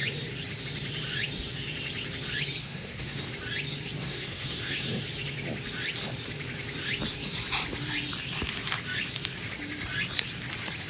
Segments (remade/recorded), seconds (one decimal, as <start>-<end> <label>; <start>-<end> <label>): 0.0-2.6 recorded; 2.6-3.3 remade; 3.3-4.0 recorded; 4.0-5.0 remade; 5.0-10.9 recorded